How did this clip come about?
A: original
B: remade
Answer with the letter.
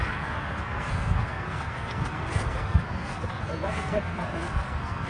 B